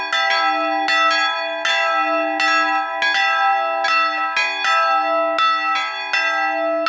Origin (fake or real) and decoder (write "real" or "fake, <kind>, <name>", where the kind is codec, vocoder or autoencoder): real